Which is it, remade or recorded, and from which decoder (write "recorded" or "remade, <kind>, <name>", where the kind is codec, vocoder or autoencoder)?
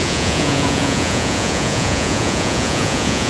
remade, vocoder, Vocos